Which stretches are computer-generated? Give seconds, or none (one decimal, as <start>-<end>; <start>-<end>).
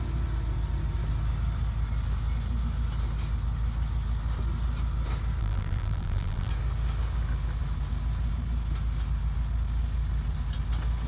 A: 5.4-6.5